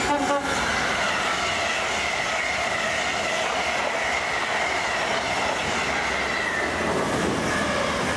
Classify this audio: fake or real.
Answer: real